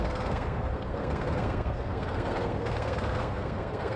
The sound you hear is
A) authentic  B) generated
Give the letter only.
B